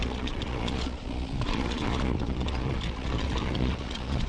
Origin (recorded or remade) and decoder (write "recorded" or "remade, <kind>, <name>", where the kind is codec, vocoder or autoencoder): remade, vocoder, Vocos